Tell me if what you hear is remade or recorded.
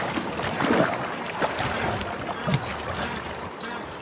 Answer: recorded